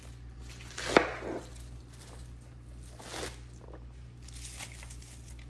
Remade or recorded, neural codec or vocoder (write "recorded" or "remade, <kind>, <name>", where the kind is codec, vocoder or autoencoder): recorded